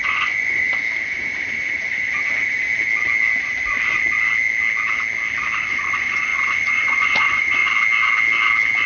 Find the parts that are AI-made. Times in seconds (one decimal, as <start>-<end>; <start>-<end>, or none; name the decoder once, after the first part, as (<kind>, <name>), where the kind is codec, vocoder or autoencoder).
0.0-0.7 (vocoder, Vocos); 5.7-7.6